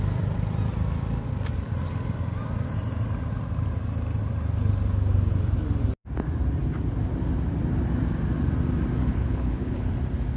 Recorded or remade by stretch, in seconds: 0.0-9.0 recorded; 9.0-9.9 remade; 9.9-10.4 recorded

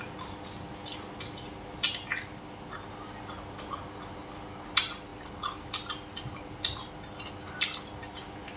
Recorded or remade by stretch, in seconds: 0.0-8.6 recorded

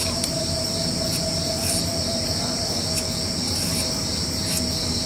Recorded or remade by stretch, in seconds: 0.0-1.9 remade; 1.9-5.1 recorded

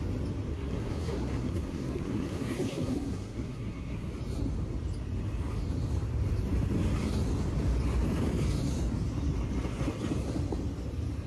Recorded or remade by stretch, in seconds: 0.0-0.5 recorded; 0.5-4.1 remade; 4.1-11.3 recorded

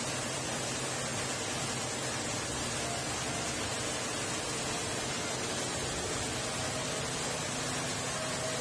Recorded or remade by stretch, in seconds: 0.0-8.6 recorded

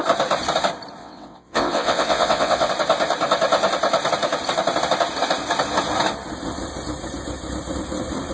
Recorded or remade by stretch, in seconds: 0.0-1.0 recorded; 1.0-2.7 remade; 2.7-8.3 recorded